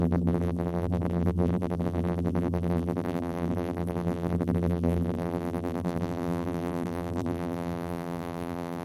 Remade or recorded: remade